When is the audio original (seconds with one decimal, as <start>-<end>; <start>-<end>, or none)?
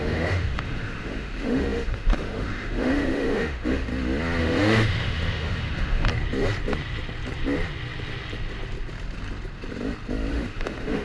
3.9-4.4; 6.1-10.3